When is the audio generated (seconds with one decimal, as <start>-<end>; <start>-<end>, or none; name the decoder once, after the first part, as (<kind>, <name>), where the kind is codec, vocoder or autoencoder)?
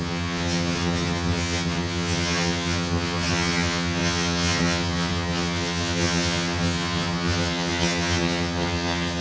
0.0-9.2 (vocoder, HiFi-GAN)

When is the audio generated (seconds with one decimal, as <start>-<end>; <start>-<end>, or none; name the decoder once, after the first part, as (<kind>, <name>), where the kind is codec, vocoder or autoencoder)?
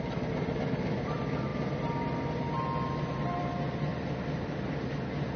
3.9-4.7 (vocoder, BigVGAN v2)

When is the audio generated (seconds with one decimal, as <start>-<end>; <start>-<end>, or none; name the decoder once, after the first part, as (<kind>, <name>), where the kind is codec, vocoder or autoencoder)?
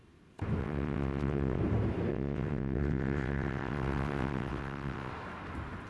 0.6-1.6 (vocoder, WaveNeXt); 2.1-5.1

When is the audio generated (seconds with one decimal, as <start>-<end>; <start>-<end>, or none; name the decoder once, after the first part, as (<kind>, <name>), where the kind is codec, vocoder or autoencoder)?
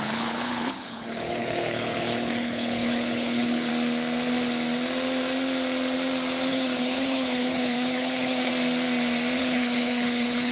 0.0-3.7 (codec, HILCodec); 6.5-8.5; 9.4-10.5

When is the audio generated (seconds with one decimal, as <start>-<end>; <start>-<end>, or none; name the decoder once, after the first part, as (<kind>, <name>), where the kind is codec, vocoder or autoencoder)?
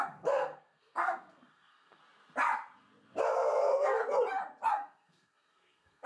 0.0-2.0 (codec, SNAC); 3.2-4.0; 4.7-6.1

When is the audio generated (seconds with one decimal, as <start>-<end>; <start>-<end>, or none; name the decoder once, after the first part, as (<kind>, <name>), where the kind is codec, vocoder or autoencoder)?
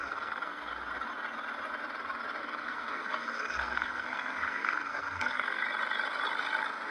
0.0-0.7 (codec, SNAC); 2.4-5.6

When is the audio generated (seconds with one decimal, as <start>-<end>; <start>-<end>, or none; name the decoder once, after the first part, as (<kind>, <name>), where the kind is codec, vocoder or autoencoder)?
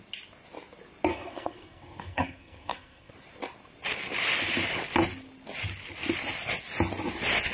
1.1-3.1 (codec, SNAC)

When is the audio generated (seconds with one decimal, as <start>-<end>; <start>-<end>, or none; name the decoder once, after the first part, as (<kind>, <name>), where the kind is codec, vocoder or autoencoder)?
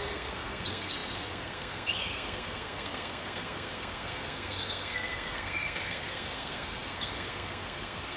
0.0-8.2 (codec, SNAC)